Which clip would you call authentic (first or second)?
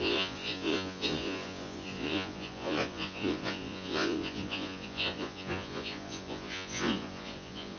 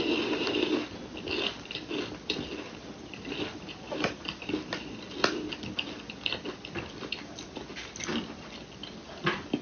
second